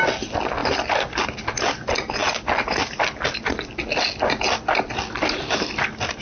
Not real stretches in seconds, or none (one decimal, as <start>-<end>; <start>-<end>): none